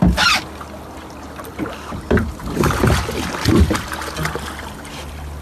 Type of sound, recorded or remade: recorded